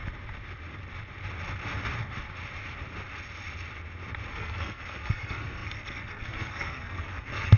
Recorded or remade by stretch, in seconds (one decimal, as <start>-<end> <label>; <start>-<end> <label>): 0.0-4.3 recorded; 4.3-7.6 remade